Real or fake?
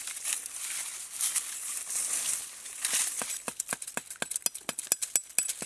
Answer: real